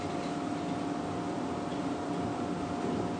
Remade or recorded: recorded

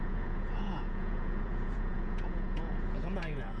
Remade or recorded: remade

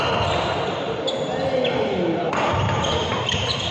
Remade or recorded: recorded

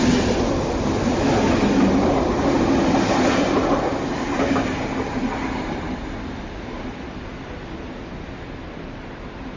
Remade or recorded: recorded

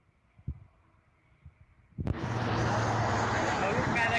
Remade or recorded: recorded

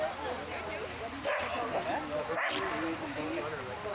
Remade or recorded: recorded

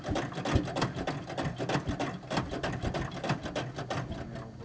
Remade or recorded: recorded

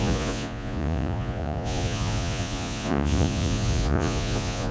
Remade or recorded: remade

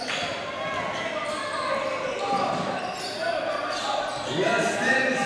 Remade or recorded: recorded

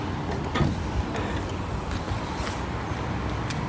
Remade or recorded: recorded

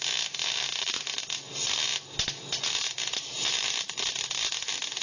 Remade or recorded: recorded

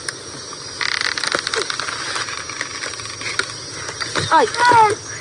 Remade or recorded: recorded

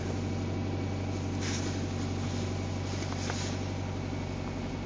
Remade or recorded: recorded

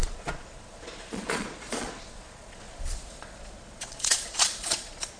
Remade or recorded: remade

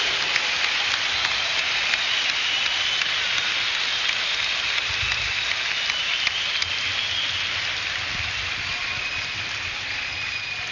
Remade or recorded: recorded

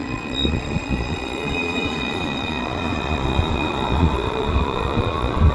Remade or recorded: remade